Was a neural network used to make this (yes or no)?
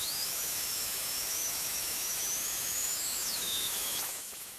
yes